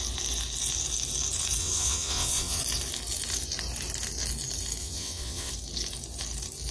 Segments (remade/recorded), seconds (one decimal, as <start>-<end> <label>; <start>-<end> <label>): 0.0-1.6 recorded; 1.6-2.6 remade; 2.6-4.8 recorded; 4.8-5.5 remade; 5.5-6.7 recorded